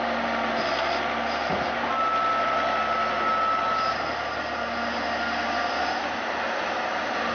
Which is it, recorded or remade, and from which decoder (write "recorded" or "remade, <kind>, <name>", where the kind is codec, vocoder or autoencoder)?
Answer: recorded